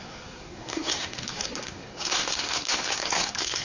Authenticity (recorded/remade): remade